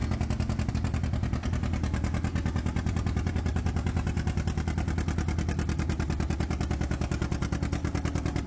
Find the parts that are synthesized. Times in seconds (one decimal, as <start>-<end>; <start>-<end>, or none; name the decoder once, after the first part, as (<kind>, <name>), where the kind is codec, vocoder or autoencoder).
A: none